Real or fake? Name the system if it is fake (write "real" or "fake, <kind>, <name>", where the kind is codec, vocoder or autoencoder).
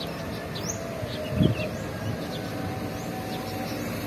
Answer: real